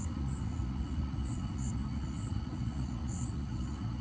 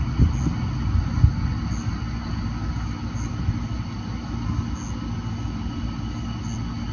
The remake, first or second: first